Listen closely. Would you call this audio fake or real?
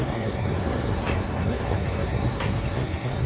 fake